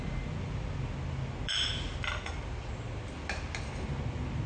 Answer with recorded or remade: recorded